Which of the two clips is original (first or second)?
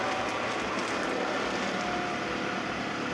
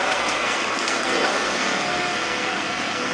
first